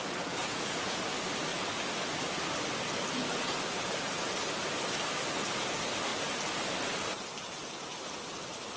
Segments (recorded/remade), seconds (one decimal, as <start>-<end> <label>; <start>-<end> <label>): 0.0-0.4 recorded; 0.4-1.0 remade; 1.0-8.8 recorded